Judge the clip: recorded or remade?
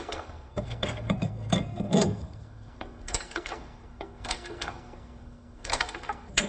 remade